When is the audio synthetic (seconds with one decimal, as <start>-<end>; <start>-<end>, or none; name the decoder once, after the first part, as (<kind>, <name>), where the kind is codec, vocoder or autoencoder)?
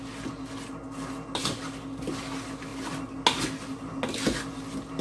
none